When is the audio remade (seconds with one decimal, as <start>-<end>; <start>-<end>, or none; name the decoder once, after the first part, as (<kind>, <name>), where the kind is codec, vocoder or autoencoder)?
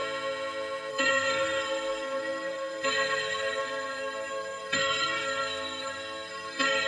0.9-6.9 (codec, SNAC)